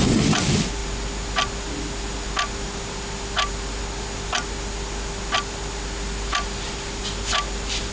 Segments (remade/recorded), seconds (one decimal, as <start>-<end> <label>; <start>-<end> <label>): 0.0-7.9 recorded